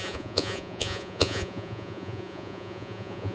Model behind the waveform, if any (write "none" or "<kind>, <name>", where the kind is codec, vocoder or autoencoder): vocoder, Vocos